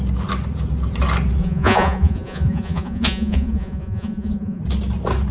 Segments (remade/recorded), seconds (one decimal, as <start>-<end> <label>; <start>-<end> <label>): 0.0-1.4 recorded; 1.4-4.6 remade; 4.6-5.3 recorded